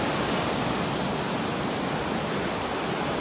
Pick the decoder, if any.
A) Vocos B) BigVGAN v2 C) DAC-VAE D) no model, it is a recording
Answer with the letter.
D